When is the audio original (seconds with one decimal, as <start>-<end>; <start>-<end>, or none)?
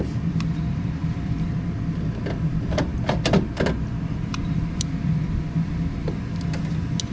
6.0-7.1